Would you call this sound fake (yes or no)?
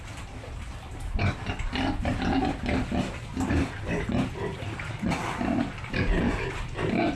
no